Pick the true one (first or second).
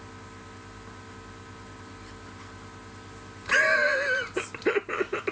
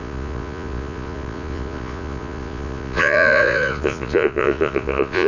first